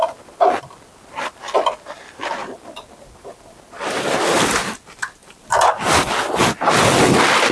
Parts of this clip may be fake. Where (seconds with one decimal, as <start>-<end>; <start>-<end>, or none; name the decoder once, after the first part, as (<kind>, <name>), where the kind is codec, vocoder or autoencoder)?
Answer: none